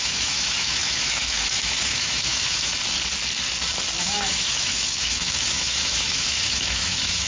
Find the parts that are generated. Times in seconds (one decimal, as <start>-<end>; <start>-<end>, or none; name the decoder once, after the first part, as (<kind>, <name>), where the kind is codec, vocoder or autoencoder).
0.0-2.7 (autoencoder, DAC-VAE); 4.0-7.3